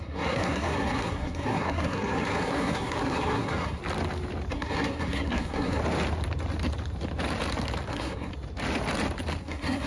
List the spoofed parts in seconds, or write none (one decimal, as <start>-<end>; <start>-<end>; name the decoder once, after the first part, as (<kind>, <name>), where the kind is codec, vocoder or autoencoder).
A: 0.0-3.8 (codec, SNAC); 4.5-5.8; 7.9-8.3; 9.4-9.9

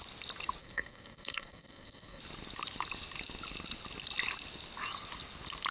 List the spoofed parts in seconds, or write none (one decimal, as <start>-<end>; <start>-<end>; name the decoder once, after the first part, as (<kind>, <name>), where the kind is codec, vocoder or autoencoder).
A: 0.6-2.2 (codec, SNAC)

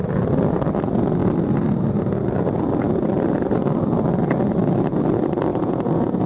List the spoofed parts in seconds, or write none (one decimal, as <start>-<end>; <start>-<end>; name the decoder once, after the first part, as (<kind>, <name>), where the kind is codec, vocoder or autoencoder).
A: 5.5-6.3 (vocoder, Vocos)

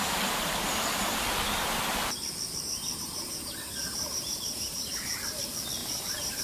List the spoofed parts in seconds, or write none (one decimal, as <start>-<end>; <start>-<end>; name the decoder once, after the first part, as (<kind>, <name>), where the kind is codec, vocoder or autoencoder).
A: 3.8-5.1 (vocoder, BigVGAN v2); 5.8-6.4

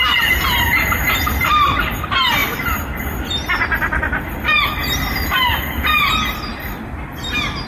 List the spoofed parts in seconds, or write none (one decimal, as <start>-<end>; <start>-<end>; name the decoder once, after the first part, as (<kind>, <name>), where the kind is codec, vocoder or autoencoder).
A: 0.0-7.7 (vocoder, BigVGAN v2)